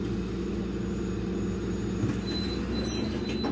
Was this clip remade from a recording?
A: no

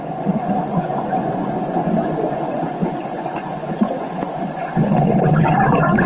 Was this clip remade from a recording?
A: yes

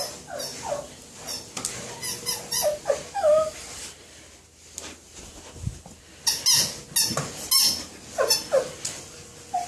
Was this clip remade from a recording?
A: no